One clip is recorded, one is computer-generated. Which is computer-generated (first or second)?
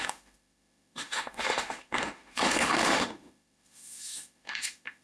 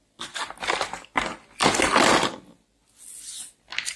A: first